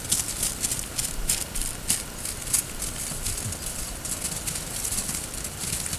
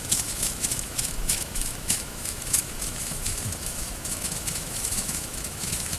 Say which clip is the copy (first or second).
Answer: second